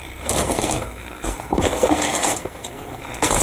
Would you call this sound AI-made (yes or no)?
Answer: yes